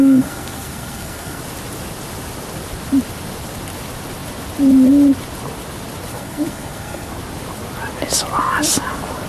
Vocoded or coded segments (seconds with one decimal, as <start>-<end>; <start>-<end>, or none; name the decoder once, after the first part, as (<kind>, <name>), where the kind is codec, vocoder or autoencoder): 0.0-1.4 (codec, SNAC); 6.1-7.1